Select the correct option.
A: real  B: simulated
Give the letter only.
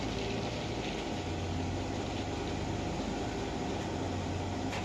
A